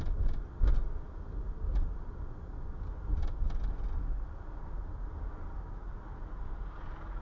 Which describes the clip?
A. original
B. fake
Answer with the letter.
A